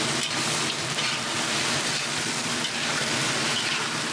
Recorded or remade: recorded